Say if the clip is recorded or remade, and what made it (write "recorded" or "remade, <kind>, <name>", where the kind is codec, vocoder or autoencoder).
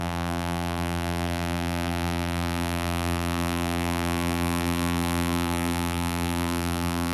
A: remade, vocoder, BigVGAN v2